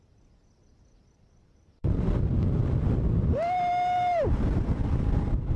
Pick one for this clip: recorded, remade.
remade